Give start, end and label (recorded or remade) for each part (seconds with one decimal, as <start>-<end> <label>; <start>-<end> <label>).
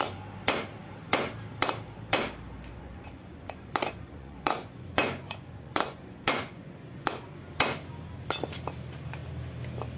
0.0-2.7 recorded; 2.7-7.3 remade; 7.3-10.0 recorded